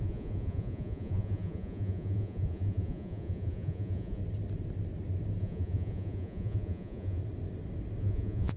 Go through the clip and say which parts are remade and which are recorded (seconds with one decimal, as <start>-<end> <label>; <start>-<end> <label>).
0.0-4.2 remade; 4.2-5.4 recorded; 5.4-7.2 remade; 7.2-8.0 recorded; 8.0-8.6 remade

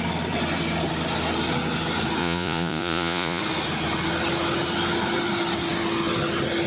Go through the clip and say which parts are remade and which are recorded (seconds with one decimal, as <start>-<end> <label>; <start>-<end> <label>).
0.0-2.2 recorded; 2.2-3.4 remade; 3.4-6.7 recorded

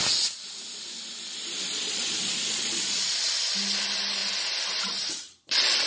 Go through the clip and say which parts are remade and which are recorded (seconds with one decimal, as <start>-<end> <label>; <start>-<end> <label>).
0.0-1.7 recorded; 1.7-3.1 remade; 3.1-5.9 recorded